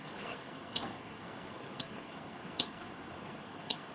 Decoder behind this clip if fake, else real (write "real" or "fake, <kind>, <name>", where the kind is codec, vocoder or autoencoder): fake, codec, SNAC